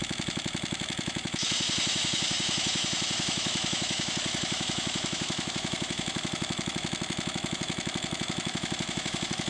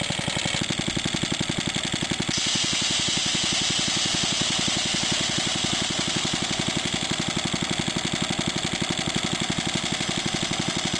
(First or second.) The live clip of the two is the second